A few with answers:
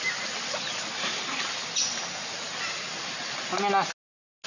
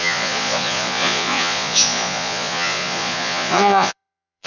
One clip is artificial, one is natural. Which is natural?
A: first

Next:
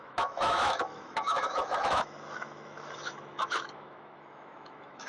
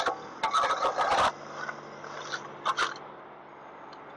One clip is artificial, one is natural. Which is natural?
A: second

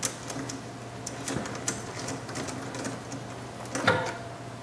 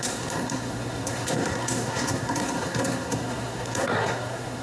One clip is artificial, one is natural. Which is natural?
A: first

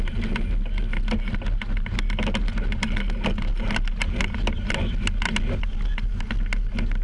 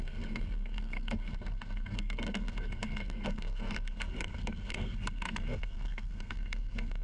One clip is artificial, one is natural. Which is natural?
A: first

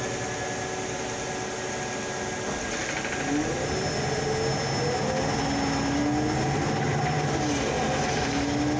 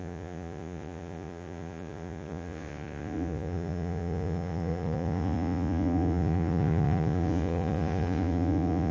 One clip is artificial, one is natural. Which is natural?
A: first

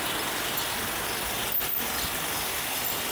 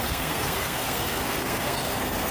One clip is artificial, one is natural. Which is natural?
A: first